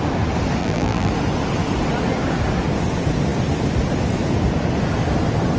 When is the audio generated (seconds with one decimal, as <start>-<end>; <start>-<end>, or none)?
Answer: 0.6-1.1